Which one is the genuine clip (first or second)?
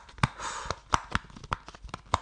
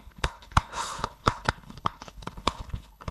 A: first